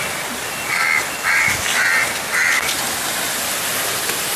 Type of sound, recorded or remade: recorded